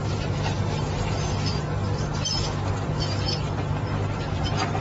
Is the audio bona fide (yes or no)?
yes